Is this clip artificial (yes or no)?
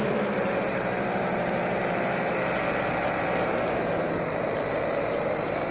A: yes